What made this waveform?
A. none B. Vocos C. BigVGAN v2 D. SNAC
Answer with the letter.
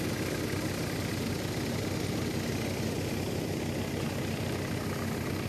A